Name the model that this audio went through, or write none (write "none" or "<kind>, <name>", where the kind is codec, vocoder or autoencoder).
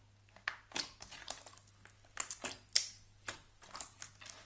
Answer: none